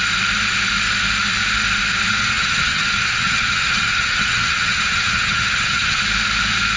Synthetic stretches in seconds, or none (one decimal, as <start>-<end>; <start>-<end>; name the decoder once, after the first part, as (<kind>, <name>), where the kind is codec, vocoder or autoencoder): 2.2-6.0 (vocoder, HiFi-GAN)